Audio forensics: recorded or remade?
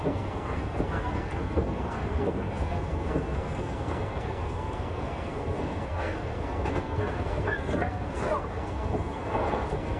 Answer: remade